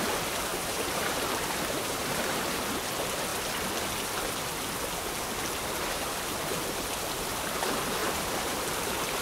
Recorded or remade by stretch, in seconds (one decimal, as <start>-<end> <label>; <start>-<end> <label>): 0.0-0.5 recorded; 0.5-2.3 remade; 2.3-8.0 recorded; 8.0-8.7 remade; 8.7-9.2 recorded